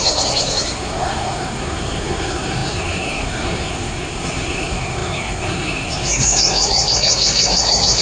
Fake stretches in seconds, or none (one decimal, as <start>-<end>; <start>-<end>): 0.0-8.0